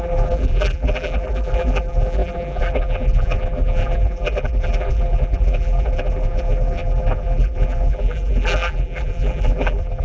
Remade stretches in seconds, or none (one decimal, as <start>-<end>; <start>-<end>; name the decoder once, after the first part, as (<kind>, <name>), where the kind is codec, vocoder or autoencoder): 0.0-10.0 (vocoder, BigVGAN v2)